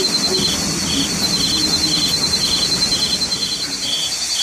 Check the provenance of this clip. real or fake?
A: real